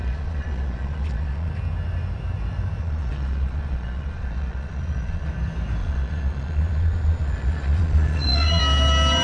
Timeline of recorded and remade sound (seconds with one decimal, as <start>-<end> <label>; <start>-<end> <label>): 0.0-1.5 remade; 1.5-2.8 recorded; 2.8-5.3 remade; 5.3-5.8 recorded; 5.8-8.6 remade; 8.6-9.2 recorded